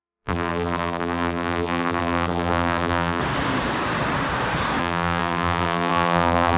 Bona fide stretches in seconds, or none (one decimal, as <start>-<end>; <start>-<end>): 3.2-4.8